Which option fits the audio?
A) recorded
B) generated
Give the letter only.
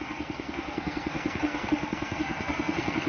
B